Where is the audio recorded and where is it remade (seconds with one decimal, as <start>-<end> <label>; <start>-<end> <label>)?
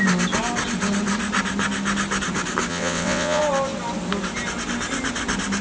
0.0-2.7 recorded; 2.7-3.4 remade; 3.4-5.6 recorded